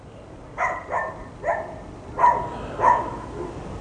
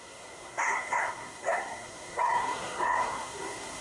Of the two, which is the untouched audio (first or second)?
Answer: first